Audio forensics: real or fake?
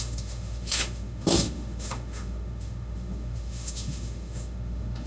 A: fake